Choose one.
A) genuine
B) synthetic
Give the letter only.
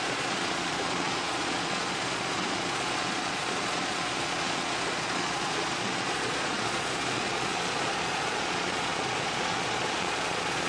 B